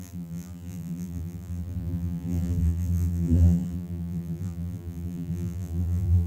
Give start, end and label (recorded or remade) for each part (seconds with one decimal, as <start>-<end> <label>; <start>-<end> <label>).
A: 0.0-6.3 remade